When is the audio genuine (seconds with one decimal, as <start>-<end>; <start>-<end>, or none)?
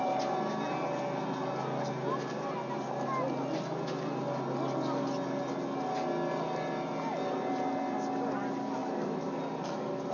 0.0-10.1